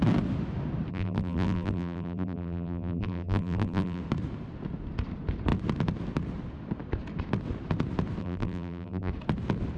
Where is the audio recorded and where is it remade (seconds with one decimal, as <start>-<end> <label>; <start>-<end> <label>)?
0.0-0.9 recorded; 0.9-4.0 remade; 4.0-8.2 recorded; 8.2-9.1 remade; 9.1-9.8 recorded